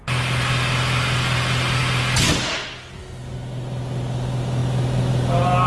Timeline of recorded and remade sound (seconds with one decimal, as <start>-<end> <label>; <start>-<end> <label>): 0.0-5.7 recorded